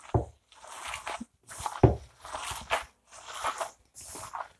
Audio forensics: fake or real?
real